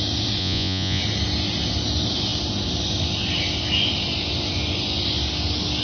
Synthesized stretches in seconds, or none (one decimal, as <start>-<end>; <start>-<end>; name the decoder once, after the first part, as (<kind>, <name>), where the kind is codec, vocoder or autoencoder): 0.4-1.0 (vocoder, Vocos)